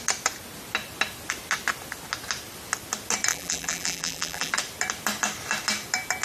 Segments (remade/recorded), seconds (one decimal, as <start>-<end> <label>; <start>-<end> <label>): 0.0-3.3 recorded; 3.3-4.5 remade; 4.5-6.2 recorded